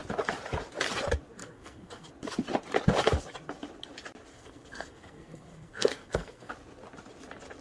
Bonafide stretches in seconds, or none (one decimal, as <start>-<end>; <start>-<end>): 0.0-1.4; 2.1-4.3; 6.5-7.6